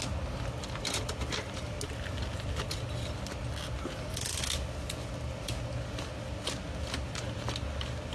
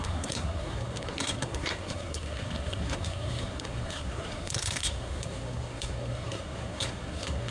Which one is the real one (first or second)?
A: first